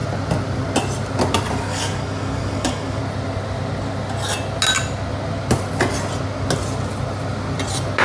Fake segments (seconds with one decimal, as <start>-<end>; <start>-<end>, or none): 1.7-3.0

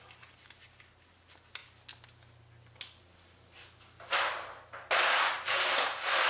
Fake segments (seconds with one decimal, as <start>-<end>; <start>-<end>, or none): none

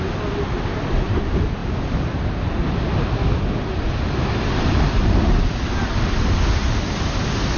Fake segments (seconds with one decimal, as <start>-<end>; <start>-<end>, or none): none

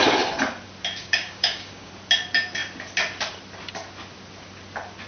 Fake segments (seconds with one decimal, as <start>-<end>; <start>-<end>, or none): 1.0-1.9